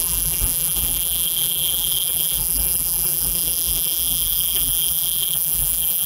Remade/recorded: remade